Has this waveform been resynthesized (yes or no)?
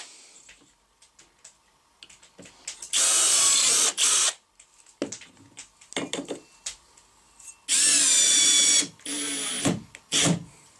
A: no